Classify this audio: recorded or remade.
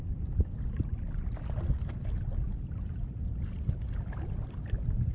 recorded